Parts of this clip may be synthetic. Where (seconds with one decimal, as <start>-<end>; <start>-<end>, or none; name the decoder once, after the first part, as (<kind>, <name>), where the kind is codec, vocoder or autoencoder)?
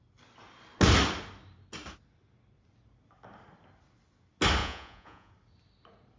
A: 4.6-5.3 (vocoder, Vocos)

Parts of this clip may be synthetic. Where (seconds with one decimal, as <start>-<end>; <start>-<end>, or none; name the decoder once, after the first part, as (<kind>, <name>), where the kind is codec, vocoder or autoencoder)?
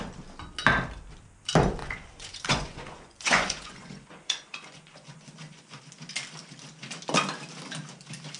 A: 1.8-5.8 (vocoder, Vocos)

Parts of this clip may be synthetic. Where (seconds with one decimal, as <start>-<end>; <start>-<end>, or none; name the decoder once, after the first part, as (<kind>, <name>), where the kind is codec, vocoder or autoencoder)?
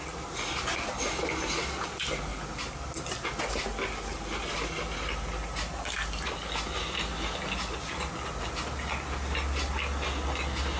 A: none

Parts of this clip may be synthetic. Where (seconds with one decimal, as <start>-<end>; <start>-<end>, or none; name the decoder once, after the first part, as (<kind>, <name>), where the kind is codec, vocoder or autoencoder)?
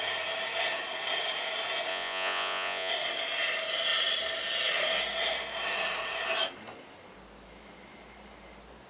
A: 1.9-2.9 (vocoder, Vocos)